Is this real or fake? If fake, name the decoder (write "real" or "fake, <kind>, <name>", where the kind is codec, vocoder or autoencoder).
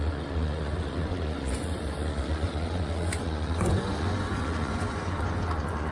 fake, vocoder, Vocos